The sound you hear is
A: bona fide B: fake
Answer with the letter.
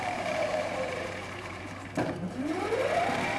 B